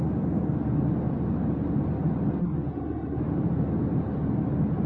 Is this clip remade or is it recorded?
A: recorded